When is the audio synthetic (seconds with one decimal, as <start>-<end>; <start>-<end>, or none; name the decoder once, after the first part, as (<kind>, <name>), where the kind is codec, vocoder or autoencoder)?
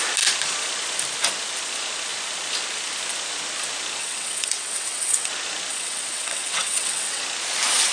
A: 4.0-5.3 (vocoder, WaveNeXt); 5.7-7.2